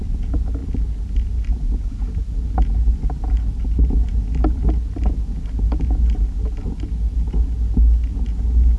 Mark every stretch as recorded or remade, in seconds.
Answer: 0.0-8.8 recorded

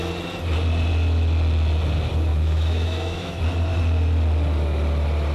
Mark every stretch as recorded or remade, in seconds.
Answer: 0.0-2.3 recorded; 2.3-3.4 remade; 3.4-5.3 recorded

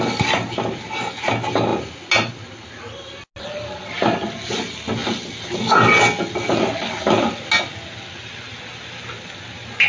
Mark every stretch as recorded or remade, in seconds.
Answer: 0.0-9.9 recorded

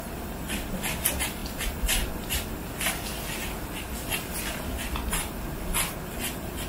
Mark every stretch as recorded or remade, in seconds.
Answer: 0.0-6.7 recorded

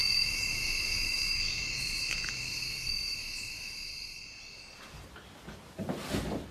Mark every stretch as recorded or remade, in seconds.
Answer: 0.0-3.9 remade; 3.9-6.5 recorded